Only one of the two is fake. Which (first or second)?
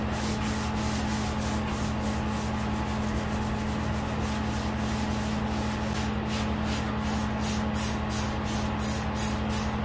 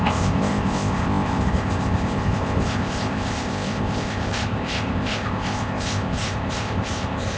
second